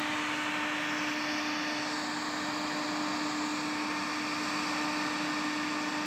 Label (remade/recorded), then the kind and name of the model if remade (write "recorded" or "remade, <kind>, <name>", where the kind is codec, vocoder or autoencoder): recorded